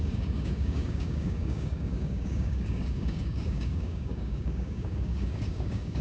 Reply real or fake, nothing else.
fake